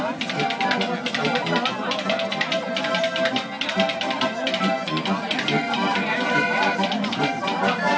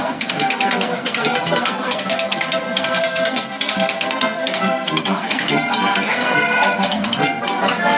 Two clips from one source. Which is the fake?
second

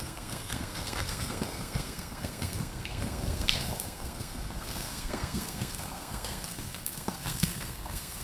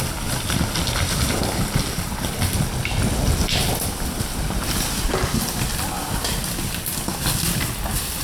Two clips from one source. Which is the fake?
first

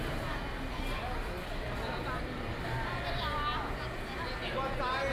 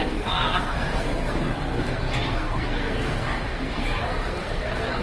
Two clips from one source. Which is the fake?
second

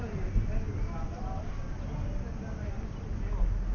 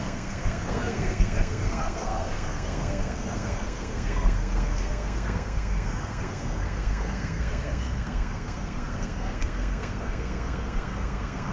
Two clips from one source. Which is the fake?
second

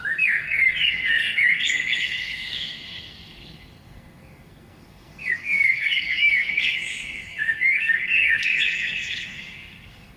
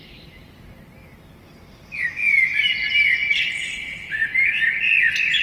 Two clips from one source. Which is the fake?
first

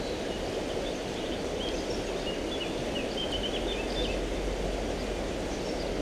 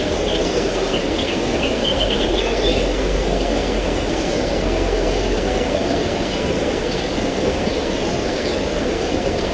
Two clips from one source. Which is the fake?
second